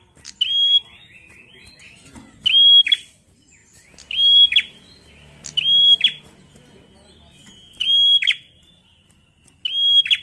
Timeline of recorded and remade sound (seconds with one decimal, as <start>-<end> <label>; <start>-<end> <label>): 0.0-10.2 recorded